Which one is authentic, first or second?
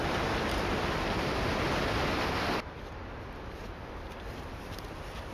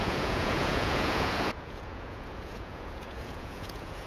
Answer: first